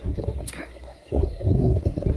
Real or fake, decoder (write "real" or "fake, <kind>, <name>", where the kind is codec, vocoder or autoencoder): fake, codec, SNAC